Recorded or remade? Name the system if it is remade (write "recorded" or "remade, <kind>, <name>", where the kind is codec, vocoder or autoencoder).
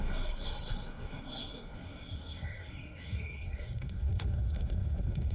remade, codec, SNAC